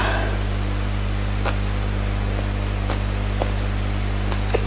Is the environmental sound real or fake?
real